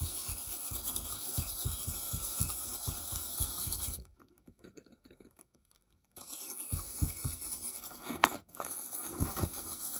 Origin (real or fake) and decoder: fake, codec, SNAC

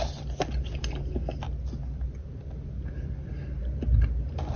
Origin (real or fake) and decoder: real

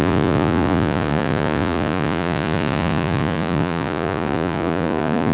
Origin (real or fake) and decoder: fake, vocoder, Vocos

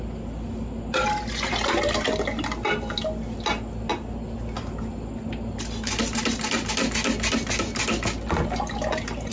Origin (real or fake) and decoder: real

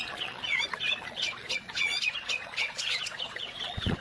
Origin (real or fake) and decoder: fake, vocoder, Vocos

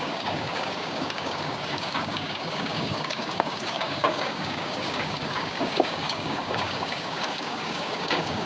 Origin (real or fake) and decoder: fake, codec, DAC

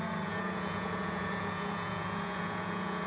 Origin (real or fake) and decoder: fake, vocoder, Vocos